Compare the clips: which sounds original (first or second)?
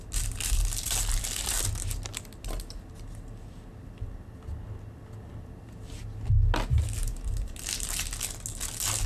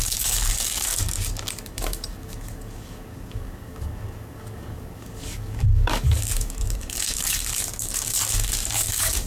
first